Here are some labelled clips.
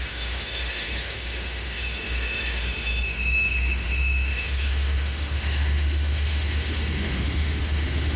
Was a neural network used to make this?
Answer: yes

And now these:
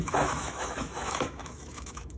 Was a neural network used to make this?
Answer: yes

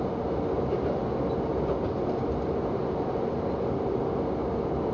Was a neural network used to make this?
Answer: no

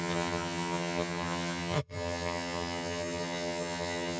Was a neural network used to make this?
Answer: yes